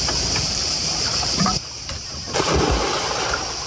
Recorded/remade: remade